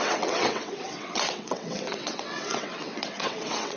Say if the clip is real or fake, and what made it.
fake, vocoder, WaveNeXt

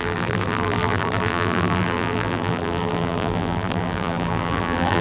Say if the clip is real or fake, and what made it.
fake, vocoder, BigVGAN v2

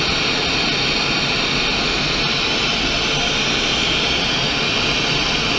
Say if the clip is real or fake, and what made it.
real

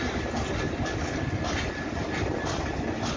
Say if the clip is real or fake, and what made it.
real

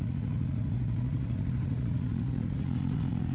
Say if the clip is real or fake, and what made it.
fake, vocoder, Vocos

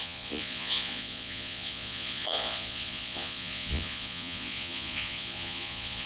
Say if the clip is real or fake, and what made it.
fake, vocoder, Vocos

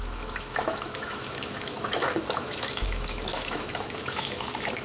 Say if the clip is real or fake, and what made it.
fake, autoencoder, DAC-VAE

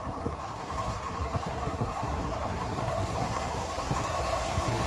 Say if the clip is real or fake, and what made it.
fake, codec, SNAC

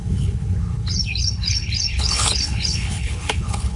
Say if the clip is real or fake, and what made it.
fake, codec, HILCodec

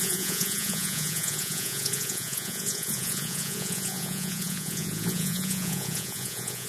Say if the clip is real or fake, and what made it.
fake, vocoder, Vocos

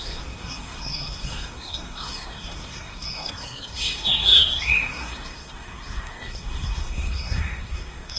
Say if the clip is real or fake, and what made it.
fake, codec, SNAC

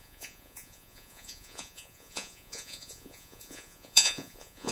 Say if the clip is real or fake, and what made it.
fake, vocoder, Vocos